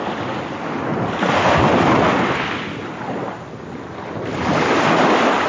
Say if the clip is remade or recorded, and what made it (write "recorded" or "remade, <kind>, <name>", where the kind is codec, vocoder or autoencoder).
recorded